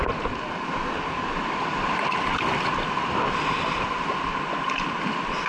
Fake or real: real